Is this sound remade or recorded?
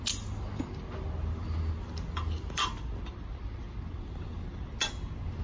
recorded